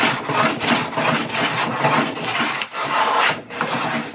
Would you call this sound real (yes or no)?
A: yes